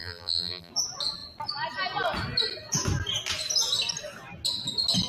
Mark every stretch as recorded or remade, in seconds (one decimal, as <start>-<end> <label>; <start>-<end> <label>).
0.0-0.7 remade; 0.7-5.1 recorded